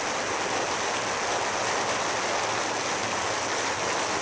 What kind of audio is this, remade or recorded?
recorded